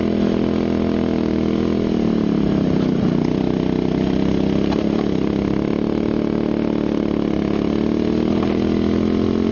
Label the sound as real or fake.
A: real